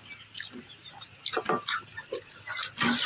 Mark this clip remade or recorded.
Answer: recorded